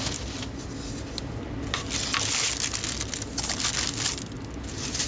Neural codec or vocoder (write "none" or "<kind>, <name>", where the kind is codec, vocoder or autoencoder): none